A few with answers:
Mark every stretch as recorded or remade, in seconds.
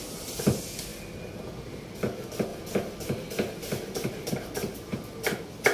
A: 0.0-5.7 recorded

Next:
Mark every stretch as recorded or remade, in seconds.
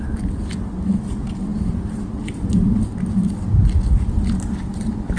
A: 0.0-5.2 recorded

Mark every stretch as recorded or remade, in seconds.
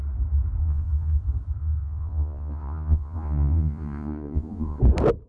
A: 0.0-0.6 recorded; 0.6-1.2 remade; 1.2-1.6 recorded; 1.6-4.8 remade; 4.8-5.3 recorded